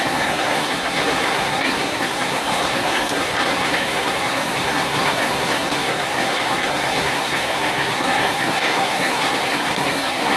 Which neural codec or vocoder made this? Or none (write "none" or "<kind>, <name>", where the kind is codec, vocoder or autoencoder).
codec, SNAC